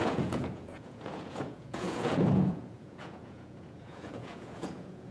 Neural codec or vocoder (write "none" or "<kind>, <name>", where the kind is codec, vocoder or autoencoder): vocoder, Vocos